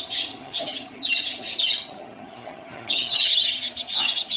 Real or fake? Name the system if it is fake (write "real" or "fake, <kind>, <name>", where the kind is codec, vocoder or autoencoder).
fake, vocoder, HiFi-GAN